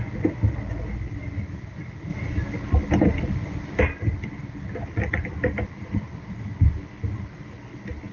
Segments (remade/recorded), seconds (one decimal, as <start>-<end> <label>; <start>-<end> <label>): 0.0-2.1 recorded; 2.1-3.8 remade; 3.8-8.1 recorded